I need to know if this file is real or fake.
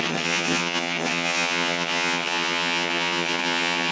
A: fake